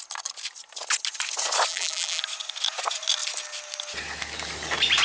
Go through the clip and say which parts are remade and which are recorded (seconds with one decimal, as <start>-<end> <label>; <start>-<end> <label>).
0.0-1.7 recorded; 1.7-2.2 remade; 2.2-5.0 recorded